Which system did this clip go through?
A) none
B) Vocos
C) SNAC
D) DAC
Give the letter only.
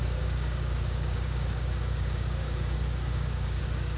D